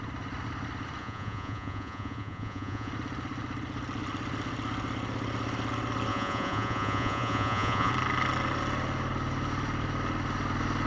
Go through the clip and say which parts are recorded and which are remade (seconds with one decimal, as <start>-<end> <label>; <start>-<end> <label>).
0.0-1.0 recorded; 1.0-2.9 remade; 2.9-6.1 recorded; 6.1-7.9 remade; 7.9-10.9 recorded